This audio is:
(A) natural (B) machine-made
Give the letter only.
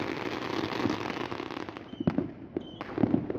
A